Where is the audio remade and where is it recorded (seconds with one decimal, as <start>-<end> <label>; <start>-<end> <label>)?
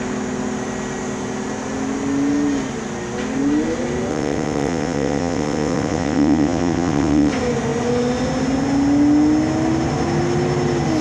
0.0-4.1 recorded; 4.1-7.3 remade; 7.3-11.0 recorded